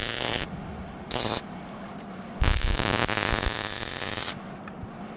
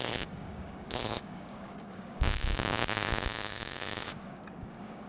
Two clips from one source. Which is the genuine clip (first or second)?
first